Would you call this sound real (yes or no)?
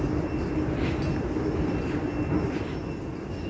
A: yes